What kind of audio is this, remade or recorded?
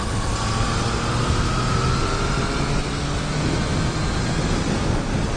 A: recorded